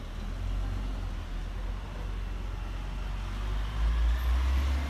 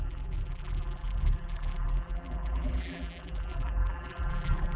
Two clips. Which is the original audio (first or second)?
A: first